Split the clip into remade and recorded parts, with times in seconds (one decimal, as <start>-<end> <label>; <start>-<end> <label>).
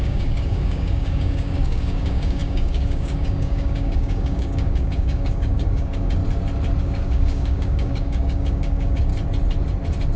0.0-6.2 remade; 6.2-6.8 recorded; 6.8-9.1 remade; 9.1-10.2 recorded